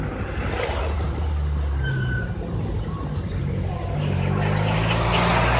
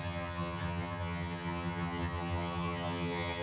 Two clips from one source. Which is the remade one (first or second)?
second